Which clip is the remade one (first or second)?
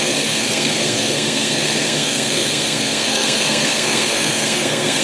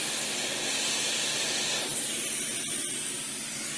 first